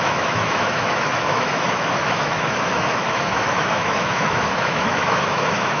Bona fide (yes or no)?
no